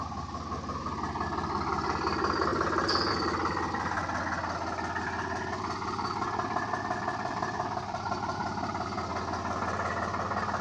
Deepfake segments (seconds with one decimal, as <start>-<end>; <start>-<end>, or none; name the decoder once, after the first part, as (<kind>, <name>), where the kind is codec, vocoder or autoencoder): 0.0-2.5 (vocoder, BigVGAN v2); 3.1-4.0; 5.3-9.1